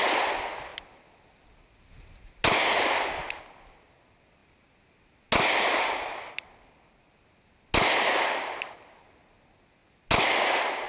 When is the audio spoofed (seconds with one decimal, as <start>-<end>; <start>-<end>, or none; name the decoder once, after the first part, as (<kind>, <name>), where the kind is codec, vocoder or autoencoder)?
none